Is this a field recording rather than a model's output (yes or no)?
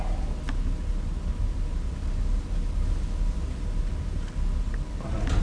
yes